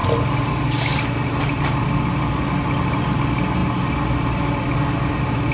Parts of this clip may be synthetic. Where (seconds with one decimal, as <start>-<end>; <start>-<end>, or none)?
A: none